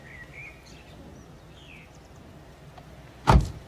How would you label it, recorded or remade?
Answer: recorded